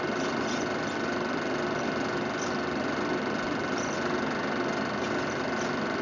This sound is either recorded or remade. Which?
recorded